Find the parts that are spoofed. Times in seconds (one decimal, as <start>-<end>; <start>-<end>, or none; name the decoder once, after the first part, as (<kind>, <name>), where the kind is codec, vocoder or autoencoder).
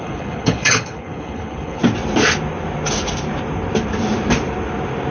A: 0.0-1.8 (codec, HILCodec)